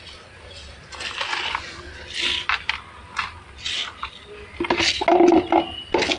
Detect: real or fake real